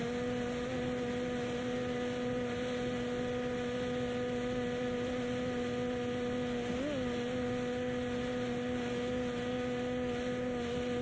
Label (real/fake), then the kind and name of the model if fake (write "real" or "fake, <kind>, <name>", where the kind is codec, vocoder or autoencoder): real